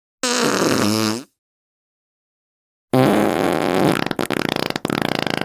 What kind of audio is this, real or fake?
real